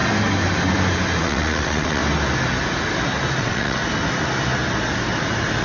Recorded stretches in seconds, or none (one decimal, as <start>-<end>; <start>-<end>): 0.0-1.2; 2.0-3.4; 3.8-5.6